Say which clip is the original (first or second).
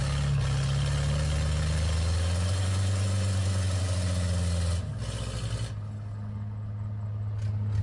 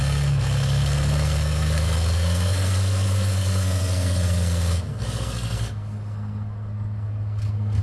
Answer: first